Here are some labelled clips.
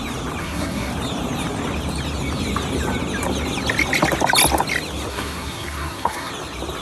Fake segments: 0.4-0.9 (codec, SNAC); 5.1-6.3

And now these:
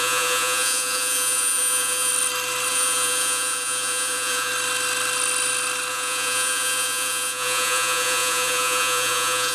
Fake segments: 0.0-2.1 (vocoder, Vocos); 2.7-4.5; 5.9-9.5

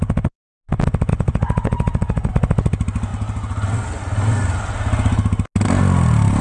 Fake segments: 1.1-2.3 (vocoder, Vocos)

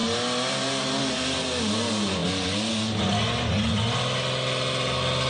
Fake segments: none

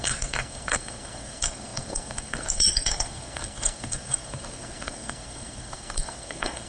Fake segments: 0.0-6.7 (codec, SNAC)

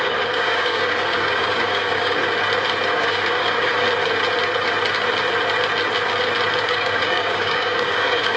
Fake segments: 0.0-2.2 (codec, DAC); 2.9-3.7; 6.7-8.4

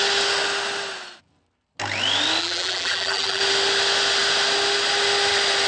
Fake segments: 2.4-3.4 (vocoder, BigVGAN v2)

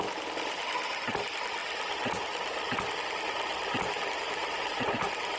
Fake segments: none